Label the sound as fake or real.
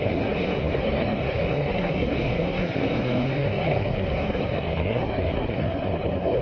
fake